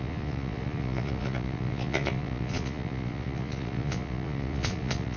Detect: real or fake fake